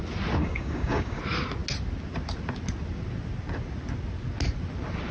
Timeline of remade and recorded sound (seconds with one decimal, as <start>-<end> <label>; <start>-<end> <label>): 0.0-0.4 recorded; 0.4-1.2 remade; 1.2-5.1 recorded